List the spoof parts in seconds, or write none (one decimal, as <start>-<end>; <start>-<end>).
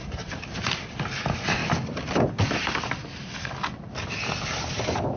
0.0-1.6; 4.7-5.2